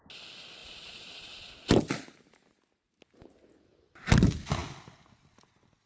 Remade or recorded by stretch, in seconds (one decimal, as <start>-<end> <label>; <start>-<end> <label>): 0.0-0.6 recorded; 0.6-1.5 remade; 1.5-5.9 recorded